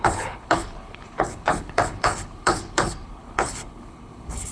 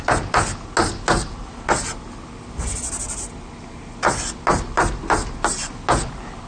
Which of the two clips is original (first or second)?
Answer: second